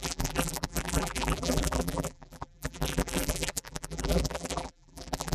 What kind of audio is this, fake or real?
fake